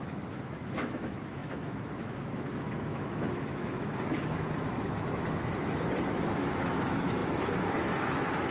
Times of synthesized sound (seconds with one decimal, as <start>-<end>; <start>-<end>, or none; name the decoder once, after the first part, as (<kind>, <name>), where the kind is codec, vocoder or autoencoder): 0.0-8.5 (autoencoder, DAC-VAE)